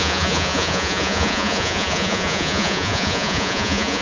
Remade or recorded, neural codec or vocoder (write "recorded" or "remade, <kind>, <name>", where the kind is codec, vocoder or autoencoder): remade, vocoder, Vocos